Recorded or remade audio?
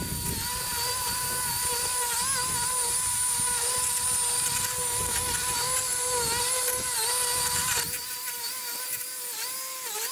recorded